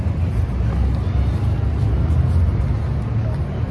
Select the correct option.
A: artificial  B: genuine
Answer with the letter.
B